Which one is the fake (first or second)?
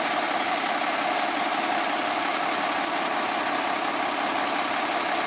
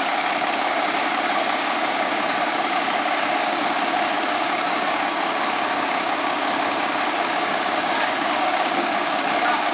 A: second